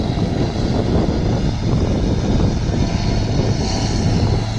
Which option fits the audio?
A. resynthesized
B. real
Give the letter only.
B